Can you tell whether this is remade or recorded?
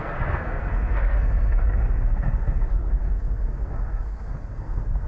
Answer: remade